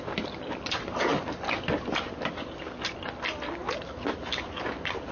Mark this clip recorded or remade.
recorded